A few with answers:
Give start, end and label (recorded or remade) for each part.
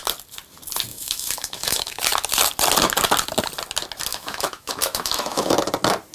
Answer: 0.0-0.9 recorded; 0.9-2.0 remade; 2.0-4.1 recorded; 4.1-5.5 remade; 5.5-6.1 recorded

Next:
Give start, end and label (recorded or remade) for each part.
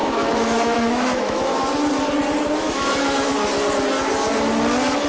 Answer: 0.0-1.5 remade; 1.5-2.6 recorded; 2.6-3.3 remade; 3.3-5.1 recorded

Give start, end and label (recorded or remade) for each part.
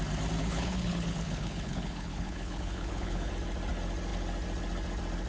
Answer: 0.0-0.4 recorded; 0.4-3.3 remade; 3.3-5.3 recorded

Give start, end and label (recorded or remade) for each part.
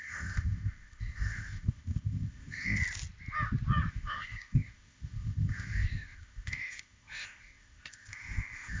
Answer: 0.0-2.8 remade; 2.8-3.9 recorded; 3.9-8.8 remade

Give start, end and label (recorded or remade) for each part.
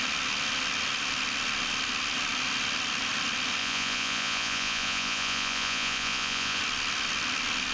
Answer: 0.0-3.6 recorded; 3.6-6.6 remade; 6.6-7.7 recorded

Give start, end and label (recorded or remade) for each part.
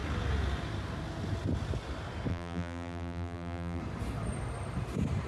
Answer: 0.0-2.3 recorded; 2.3-3.8 remade; 3.8-5.3 recorded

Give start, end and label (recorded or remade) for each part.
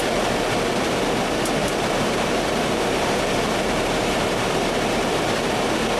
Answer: 0.0-1.6 recorded; 1.6-5.2 remade; 5.2-6.0 recorded